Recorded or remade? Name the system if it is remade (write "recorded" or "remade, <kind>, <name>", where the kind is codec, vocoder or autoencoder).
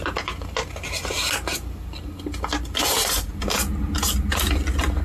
recorded